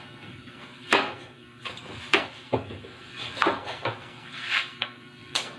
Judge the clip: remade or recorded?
remade